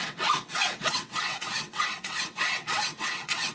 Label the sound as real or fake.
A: fake